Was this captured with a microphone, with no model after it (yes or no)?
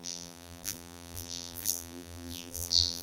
no